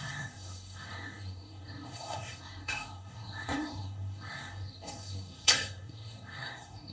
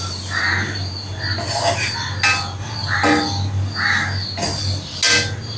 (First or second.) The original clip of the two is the second